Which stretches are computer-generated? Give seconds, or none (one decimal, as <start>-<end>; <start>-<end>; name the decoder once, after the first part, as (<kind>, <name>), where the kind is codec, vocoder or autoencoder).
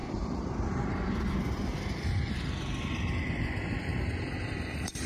3.8-5.1 (vocoder, BigVGAN v2)